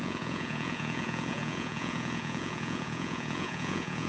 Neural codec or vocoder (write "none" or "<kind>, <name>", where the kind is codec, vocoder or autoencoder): vocoder, Vocos